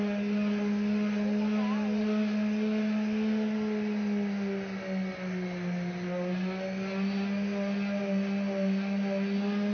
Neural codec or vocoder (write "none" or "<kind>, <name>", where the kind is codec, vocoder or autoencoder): none